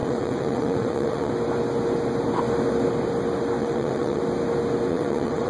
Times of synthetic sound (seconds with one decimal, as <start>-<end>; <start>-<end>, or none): 0.0-1.3; 3.6-4.2; 4.9-5.5